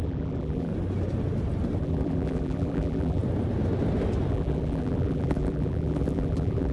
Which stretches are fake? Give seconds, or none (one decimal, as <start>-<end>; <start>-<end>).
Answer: 0.0-0.7; 1.8-3.2; 4.3-6.7